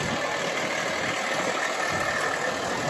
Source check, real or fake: real